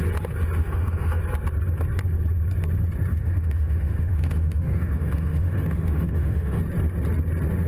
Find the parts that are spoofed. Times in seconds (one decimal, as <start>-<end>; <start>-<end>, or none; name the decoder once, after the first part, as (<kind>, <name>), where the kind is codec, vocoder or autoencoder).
0.6-1.2 (autoencoder, DAC-VAE); 3.1-6.6